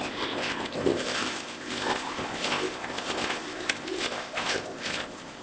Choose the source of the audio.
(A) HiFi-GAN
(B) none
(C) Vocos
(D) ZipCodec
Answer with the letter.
D